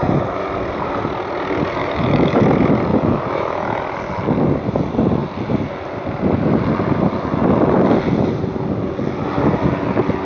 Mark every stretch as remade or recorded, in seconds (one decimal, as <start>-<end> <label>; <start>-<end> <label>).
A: 0.0-1.8 recorded; 1.8-2.4 remade; 2.4-2.9 recorded; 2.9-3.8 remade; 3.8-10.2 recorded